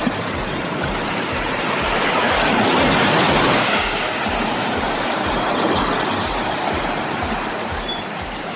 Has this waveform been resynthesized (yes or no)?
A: yes